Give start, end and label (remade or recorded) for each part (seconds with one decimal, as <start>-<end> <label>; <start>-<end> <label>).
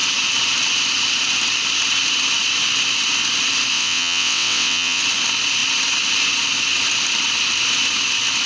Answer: 0.0-3.7 recorded; 3.7-5.0 remade; 5.0-8.5 recorded